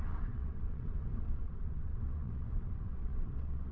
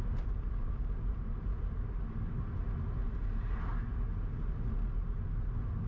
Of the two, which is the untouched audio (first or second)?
second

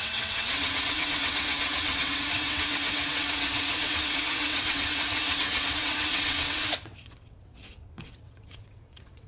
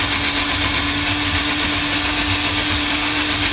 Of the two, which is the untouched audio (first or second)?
second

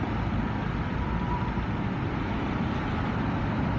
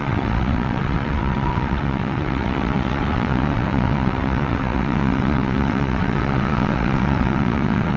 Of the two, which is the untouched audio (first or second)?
first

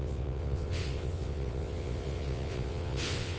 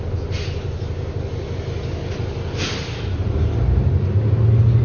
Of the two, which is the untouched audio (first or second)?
second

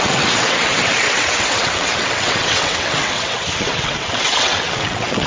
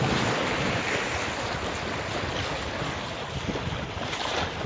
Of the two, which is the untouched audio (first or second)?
second